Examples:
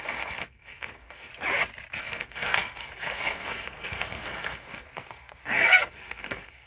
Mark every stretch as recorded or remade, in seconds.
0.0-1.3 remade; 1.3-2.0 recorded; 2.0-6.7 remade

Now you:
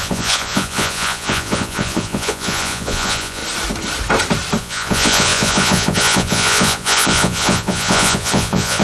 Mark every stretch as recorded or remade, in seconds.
0.0-3.4 remade; 3.4-4.6 recorded; 4.6-8.8 remade

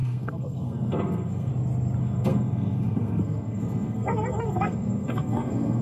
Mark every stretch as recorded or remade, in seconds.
0.0-1.5 remade; 1.5-2.0 recorded; 2.0-5.8 remade

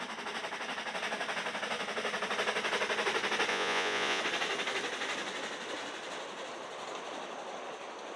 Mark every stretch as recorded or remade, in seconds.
0.0-3.5 recorded; 3.5-4.2 remade; 4.2-8.2 recorded

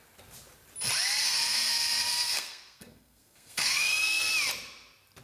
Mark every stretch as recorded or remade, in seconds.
0.0-1.2 recorded; 1.2-4.3 remade; 4.3-5.2 recorded

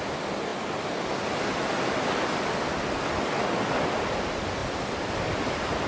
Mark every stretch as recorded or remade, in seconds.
0.0-5.9 recorded

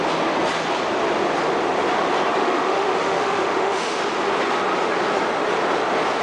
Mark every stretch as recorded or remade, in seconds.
0.0-2.4 recorded; 2.4-4.0 remade; 4.0-6.2 recorded